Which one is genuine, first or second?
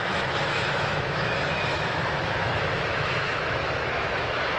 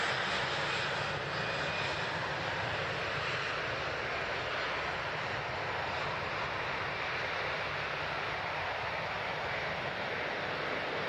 second